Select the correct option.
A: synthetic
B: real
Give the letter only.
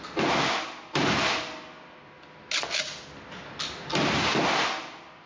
B